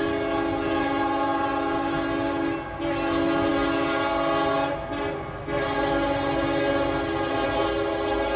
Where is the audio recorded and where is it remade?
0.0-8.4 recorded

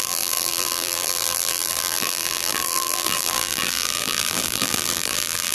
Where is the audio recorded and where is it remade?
0.0-5.5 remade

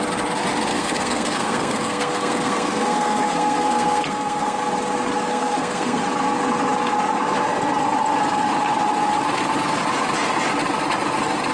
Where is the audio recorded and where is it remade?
0.0-0.7 recorded; 0.7-4.6 remade; 4.6-5.3 recorded; 5.3-6.0 remade; 6.0-11.5 recorded

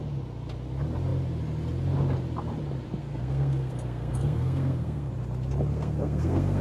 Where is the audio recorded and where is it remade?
0.0-3.0 recorded; 3.0-5.1 remade; 5.1-5.7 recorded; 5.7-6.6 remade

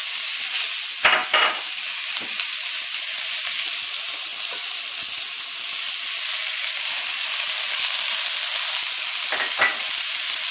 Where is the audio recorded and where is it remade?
0.0-1.2 recorded; 1.2-1.7 remade; 1.7-10.5 recorded

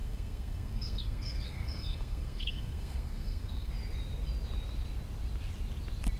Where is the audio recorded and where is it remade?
0.0-3.7 remade; 3.7-6.2 recorded

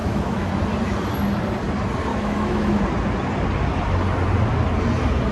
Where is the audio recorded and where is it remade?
0.0-0.5 remade; 0.5-2.1 recorded; 2.1-2.8 remade; 2.8-5.3 recorded

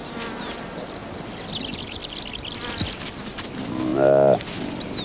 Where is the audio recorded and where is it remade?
0.0-5.0 recorded